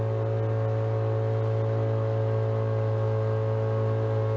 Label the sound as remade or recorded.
recorded